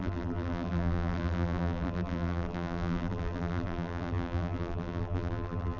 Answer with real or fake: fake